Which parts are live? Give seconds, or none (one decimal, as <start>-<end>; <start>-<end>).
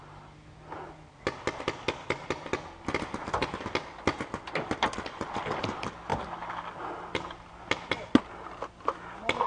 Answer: 0.0-9.5